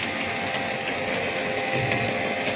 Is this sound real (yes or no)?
yes